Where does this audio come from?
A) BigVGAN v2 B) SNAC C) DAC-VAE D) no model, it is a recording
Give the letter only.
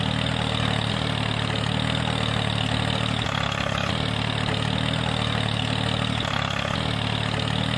D